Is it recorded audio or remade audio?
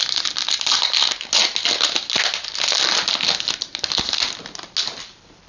recorded